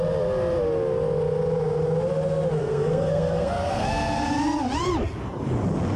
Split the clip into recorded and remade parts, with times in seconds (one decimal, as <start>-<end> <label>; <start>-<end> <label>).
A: 0.0-2.6 recorded; 2.6-3.9 remade; 3.9-6.0 recorded